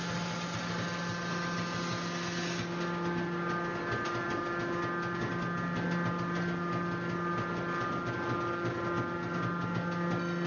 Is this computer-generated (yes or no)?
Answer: no